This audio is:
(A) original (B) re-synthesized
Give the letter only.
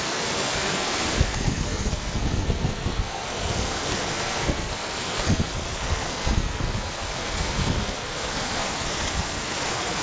B